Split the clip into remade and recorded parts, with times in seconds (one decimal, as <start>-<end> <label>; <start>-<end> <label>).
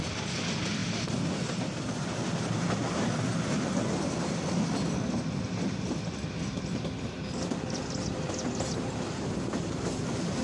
0.0-0.8 recorded; 0.8-1.3 remade; 1.3-10.4 recorded